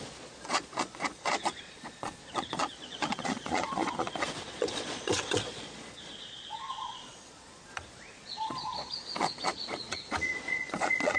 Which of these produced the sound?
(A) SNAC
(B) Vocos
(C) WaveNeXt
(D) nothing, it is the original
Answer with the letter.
B